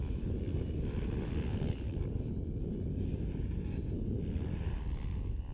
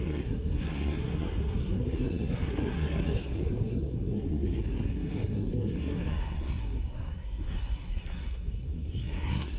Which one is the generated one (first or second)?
second